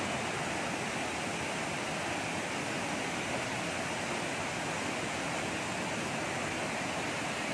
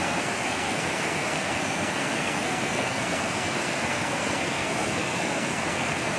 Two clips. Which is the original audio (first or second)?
first